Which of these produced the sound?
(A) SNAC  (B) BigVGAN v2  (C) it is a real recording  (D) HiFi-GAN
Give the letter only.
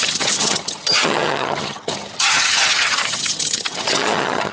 D